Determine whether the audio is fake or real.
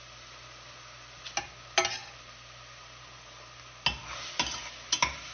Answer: real